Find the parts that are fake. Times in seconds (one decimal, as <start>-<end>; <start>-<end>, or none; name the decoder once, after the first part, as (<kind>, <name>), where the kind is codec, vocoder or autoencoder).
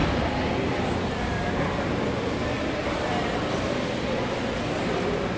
none